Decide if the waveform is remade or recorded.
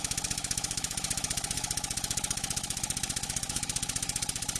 remade